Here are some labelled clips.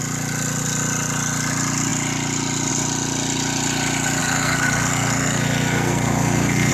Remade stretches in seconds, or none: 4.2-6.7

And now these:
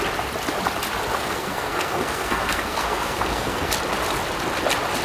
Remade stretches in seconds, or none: 1.1-3.7

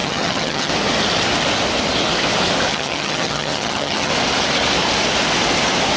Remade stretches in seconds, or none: 0.0-0.7; 2.7-4.1

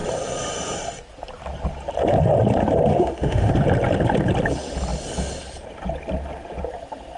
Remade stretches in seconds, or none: 2.9-3.5

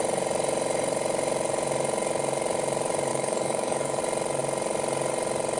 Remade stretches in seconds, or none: 3.1-4.0

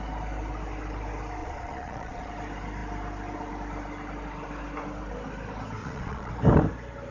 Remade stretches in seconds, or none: 1.4-2.3; 5.8-6.3

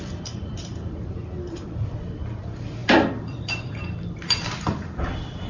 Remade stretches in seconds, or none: 0.0-5.5

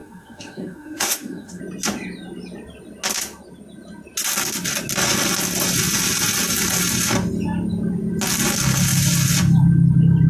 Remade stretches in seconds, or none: 0.0-1.6